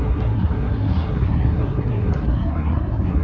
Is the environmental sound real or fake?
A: fake